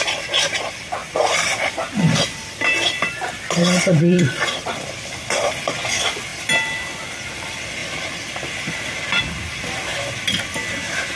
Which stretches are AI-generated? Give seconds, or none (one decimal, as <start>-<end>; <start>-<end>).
1.0-5.5; 7.8-9.2